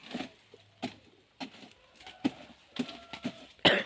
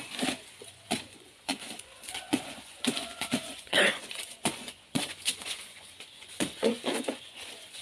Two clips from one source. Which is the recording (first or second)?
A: first